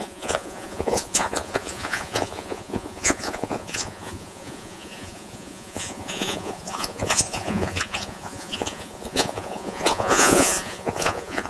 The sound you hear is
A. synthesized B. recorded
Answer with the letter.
A